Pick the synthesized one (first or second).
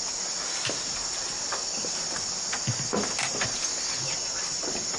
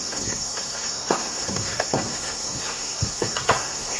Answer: second